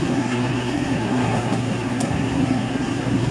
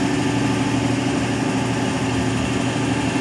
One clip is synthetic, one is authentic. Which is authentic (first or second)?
second